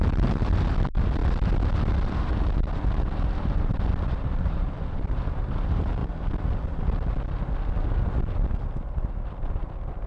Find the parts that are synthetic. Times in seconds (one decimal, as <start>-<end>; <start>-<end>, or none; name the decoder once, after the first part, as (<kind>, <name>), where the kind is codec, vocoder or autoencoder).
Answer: 0.0-1.2 (vocoder, BigVGAN v2); 1.9-6.0